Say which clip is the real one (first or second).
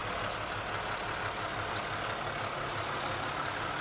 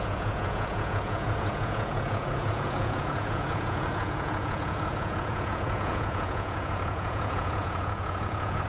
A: first